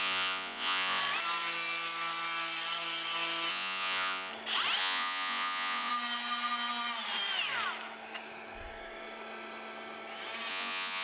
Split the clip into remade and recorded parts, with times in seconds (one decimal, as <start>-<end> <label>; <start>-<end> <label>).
0.0-1.0 remade; 1.0-3.5 recorded; 3.5-4.3 remade; 4.3-4.8 recorded; 4.8-5.9 remade; 5.9-10.5 recorded; 10.5-11.0 remade